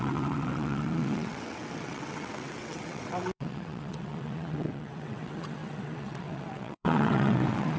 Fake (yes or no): yes